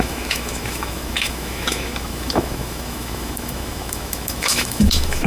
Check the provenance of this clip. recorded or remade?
remade